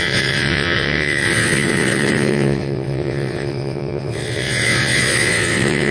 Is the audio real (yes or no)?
no